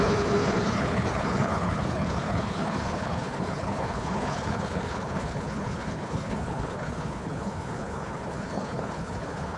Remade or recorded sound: remade